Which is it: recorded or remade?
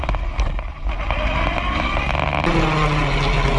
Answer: recorded